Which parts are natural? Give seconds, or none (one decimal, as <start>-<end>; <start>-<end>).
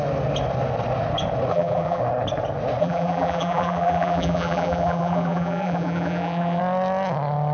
0.0-1.5; 2.0-2.8; 6.6-7.5